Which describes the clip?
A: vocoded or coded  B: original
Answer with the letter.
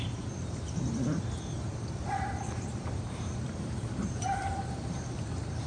A